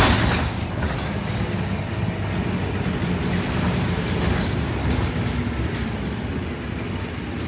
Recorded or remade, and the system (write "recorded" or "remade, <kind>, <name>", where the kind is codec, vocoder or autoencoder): recorded